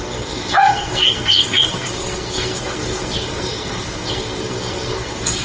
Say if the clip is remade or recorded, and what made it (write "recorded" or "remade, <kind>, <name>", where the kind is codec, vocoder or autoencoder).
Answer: remade, codec, SNAC